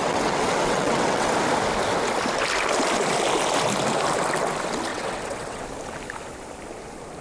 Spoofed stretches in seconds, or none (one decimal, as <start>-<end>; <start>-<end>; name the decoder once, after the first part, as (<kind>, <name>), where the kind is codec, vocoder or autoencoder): 0.0-1.3 (vocoder, WaveNeXt); 4.9-5.6